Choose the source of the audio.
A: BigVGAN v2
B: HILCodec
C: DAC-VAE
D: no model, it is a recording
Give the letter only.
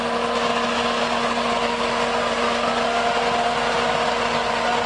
D